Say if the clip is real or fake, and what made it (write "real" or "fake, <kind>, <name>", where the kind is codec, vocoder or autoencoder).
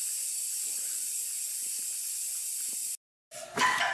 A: real